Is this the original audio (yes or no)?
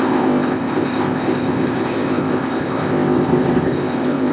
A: no